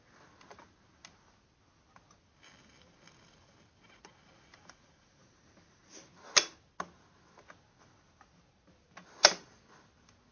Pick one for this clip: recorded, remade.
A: recorded